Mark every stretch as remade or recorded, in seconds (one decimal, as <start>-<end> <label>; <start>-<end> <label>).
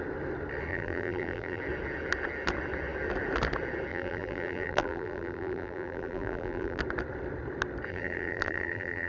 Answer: 0.0-0.7 recorded; 0.7-1.6 remade; 1.6-3.9 recorded; 3.9-6.8 remade; 6.8-7.9 recorded; 7.9-9.1 remade